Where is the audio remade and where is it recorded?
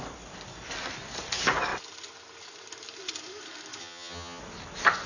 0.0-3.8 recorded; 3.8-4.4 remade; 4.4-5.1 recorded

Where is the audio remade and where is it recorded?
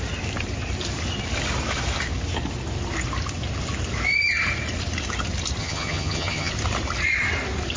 0.0-5.6 recorded; 5.6-6.5 remade; 6.5-7.8 recorded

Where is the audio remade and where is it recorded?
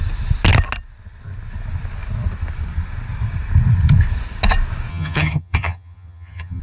0.0-4.9 recorded; 4.9-6.6 remade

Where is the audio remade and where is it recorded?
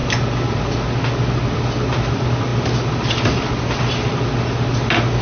0.0-5.2 recorded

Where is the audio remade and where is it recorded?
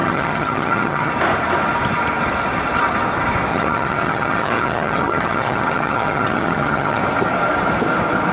0.0-1.1 remade; 1.1-3.5 recorded; 3.5-7.0 remade; 7.0-8.3 recorded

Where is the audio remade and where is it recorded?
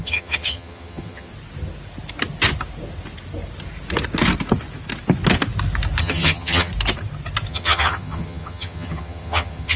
0.0-1.3 remade; 1.3-6.0 recorded; 6.0-6.7 remade; 6.7-7.5 recorded; 7.5-9.8 remade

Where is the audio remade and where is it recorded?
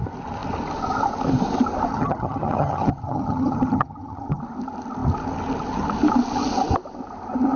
0.0-1.9 recorded; 1.9-4.4 remade; 4.4-7.6 recorded